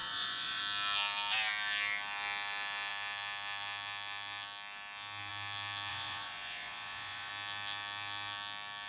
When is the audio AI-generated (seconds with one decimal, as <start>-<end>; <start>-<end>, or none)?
0.0-0.6; 5.9-7.3